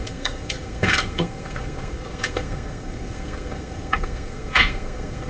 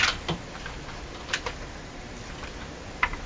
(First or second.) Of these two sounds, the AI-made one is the first